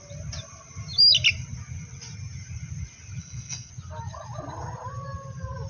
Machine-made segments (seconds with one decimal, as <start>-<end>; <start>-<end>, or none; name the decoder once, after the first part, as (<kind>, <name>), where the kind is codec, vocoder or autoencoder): 3.2-3.7 (codec, SNAC)